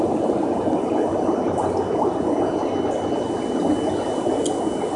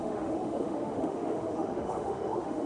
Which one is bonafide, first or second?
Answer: first